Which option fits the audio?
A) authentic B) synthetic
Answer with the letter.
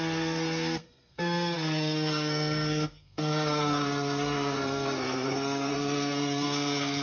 B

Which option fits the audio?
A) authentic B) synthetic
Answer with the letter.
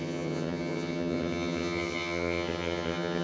B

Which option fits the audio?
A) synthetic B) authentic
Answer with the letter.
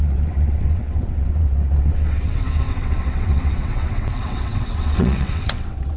A